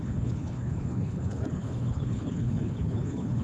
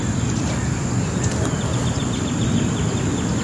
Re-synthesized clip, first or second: first